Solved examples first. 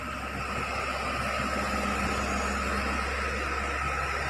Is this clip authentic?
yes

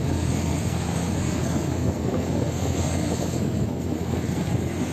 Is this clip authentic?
no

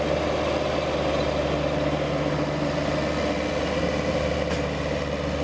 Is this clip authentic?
yes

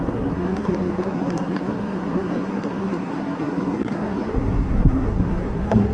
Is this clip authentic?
no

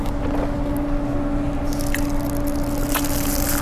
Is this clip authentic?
yes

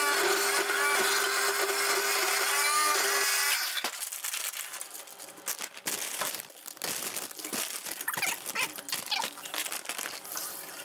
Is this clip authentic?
yes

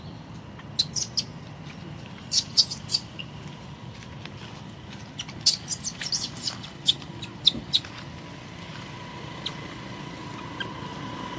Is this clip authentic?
yes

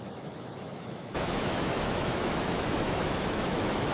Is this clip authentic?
no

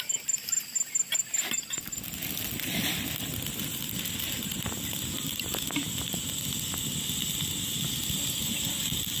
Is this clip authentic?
yes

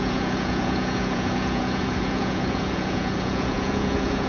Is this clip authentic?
no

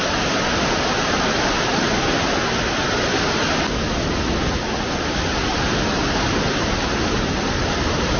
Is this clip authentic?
yes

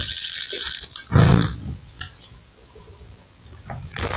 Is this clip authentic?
no